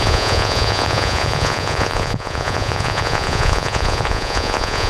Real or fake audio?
fake